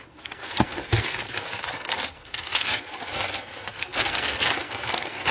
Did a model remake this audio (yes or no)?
yes